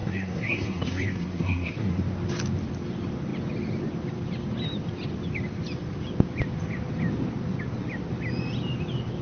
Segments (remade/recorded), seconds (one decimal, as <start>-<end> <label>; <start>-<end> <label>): 0.0-2.0 remade; 2.0-9.2 recorded